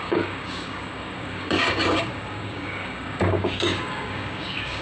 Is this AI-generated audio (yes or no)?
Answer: yes